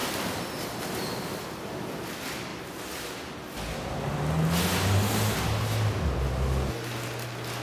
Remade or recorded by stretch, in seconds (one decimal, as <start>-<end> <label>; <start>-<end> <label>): 0.0-7.6 recorded